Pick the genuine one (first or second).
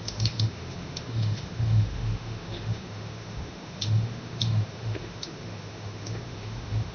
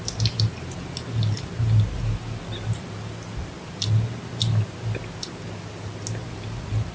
second